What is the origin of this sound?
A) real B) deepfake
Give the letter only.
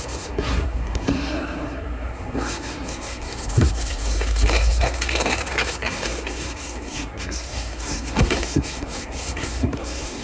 B